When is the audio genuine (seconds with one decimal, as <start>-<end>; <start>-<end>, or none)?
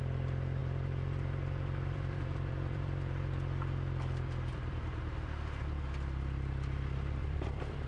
0.0-0.6; 5.0-7.2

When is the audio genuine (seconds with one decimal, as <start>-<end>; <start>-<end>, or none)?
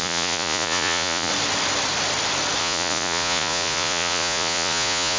1.3-2.6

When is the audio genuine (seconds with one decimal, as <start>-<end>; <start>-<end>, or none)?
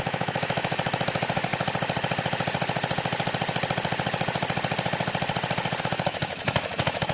1.5-5.8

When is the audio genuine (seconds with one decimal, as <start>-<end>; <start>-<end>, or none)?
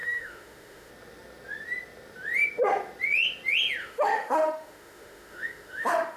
0.9-3.8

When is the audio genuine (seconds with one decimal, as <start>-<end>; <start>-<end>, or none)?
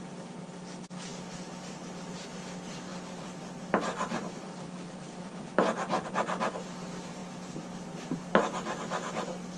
0.0-2.9; 5.3-9.6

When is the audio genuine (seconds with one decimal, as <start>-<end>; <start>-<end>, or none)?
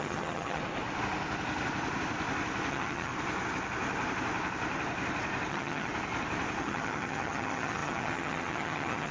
0.6-2.7; 3.1-5.5; 5.9-6.6